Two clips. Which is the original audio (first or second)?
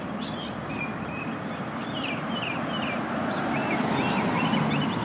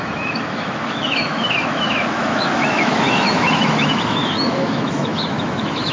first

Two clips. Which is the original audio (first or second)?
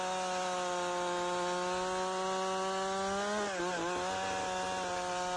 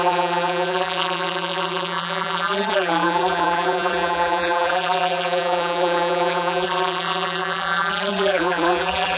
first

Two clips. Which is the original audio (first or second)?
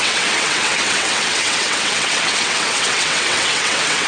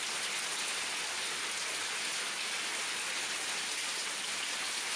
second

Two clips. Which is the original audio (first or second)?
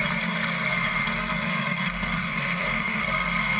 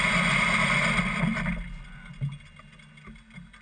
second